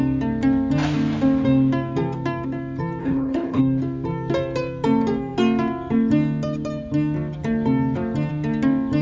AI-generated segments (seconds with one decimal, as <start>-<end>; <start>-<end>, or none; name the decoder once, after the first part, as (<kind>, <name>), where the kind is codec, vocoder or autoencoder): 3.0-3.6 (codec, HILCodec)

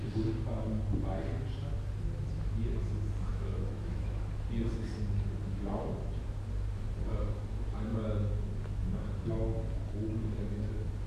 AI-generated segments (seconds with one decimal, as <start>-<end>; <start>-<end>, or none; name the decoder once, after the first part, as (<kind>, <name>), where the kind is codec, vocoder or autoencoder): 3.3-4.2 (autoencoder, DAC-VAE)

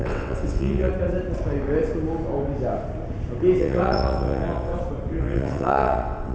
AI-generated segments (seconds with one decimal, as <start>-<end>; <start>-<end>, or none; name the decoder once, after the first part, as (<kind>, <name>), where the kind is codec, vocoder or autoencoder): 0.0-0.9 (vocoder, WaveNeXt); 3.6-4.7; 5.2-6.3